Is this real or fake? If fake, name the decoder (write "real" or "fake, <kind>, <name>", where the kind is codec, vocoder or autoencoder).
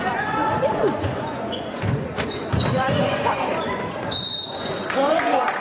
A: fake, vocoder, Vocos